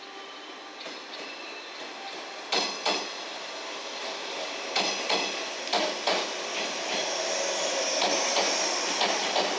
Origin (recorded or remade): recorded